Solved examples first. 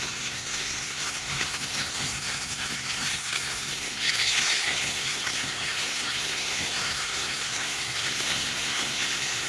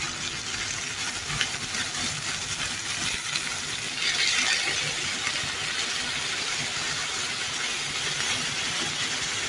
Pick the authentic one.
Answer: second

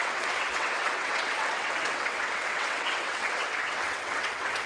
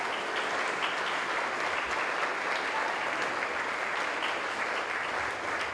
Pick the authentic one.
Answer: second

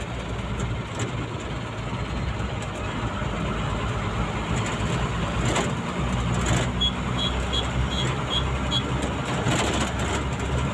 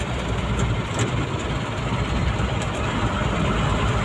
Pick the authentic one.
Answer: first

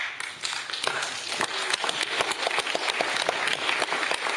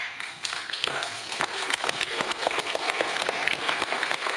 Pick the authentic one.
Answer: first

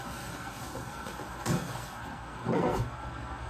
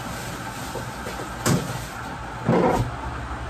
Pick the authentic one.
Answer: second